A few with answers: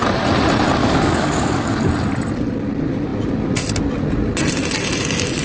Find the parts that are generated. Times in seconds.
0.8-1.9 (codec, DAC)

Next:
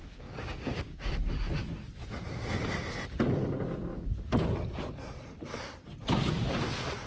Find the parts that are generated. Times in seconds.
0.0-1.1 (codec, DAC)

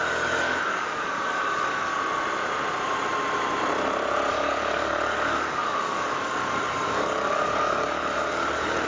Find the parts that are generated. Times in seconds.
0.0-1.9 (codec, DAC); 4.3-8.9

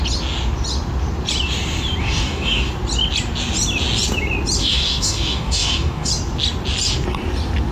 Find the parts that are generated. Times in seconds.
2.0-2.7 (codec, DAC); 4.6-6.1

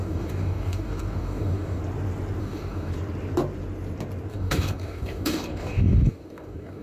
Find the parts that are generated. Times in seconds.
0.0-1.8 (codec, DAC); 2.4-2.9; 4.3-6.8